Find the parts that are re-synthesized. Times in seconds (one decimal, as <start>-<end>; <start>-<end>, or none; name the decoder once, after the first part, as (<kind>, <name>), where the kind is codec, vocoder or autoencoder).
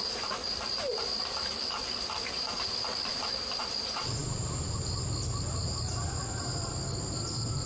1.1-1.8 (vocoder, BigVGAN v2)